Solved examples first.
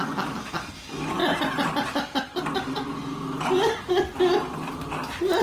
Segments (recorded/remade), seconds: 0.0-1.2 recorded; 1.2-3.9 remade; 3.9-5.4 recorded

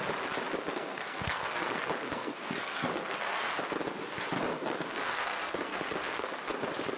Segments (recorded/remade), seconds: 0.0-0.7 recorded; 0.7-3.5 remade; 3.5-4.5 recorded; 4.5-6.3 remade; 6.3-7.0 recorded

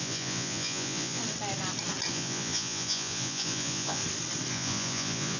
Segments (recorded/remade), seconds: 0.0-1.2 remade; 1.2-2.1 recorded; 2.1-4.0 remade; 4.0-4.5 recorded; 4.5-5.4 remade